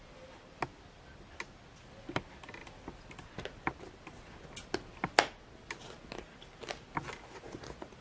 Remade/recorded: recorded